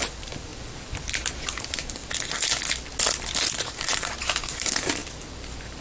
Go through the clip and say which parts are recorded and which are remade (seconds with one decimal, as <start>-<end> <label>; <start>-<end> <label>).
0.0-0.5 remade; 0.5-1.6 recorded; 1.6-2.0 remade; 2.0-3.6 recorded; 3.6-5.0 remade; 5.0-5.8 recorded